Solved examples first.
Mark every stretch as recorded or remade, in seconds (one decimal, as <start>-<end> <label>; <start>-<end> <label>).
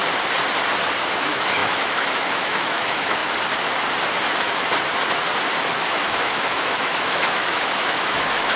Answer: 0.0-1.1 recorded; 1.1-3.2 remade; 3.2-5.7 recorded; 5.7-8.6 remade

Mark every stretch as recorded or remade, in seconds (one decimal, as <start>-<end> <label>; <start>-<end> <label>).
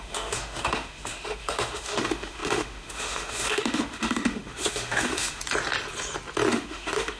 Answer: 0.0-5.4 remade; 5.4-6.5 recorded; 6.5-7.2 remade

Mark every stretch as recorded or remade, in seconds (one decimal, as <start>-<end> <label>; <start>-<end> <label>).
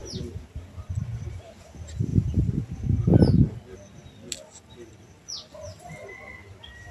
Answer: 0.0-6.9 recorded